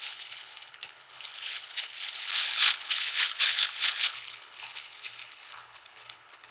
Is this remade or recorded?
remade